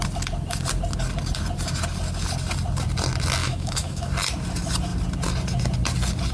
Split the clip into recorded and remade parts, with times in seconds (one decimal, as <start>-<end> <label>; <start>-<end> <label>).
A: 0.0-3.4 recorded; 3.4-4.1 remade; 4.1-6.3 recorded